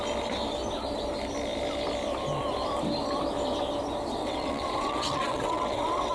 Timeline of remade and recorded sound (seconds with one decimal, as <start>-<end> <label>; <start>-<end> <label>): 0.0-4.2 recorded; 4.2-6.1 remade